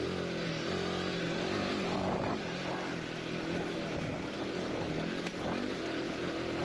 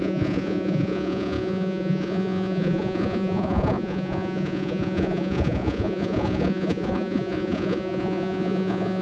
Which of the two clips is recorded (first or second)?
first